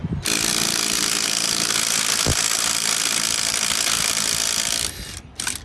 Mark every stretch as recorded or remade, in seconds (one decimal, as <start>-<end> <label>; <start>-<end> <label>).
0.0-5.6 recorded